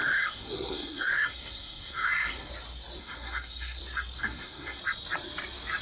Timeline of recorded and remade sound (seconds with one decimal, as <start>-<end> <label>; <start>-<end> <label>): 0.0-2.5 remade; 2.5-3.0 recorded; 3.0-3.8 remade; 3.8-4.2 recorded; 4.2-4.8 remade; 4.8-5.8 recorded